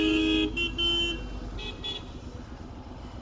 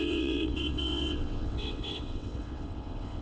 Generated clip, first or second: second